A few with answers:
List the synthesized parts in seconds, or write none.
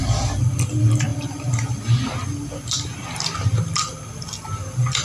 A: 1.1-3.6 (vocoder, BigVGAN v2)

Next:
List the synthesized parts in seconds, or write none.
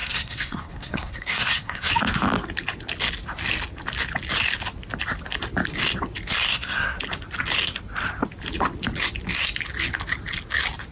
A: 0.0-1.9 (codec, SNAC); 6.5-7.0